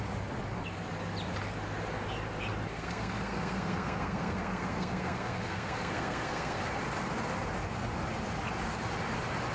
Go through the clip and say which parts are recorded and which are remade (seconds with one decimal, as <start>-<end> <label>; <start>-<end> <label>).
0.0-2.7 recorded; 2.7-6.7 remade; 6.7-9.5 recorded